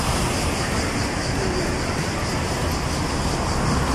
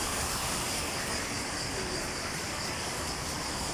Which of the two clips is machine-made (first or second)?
second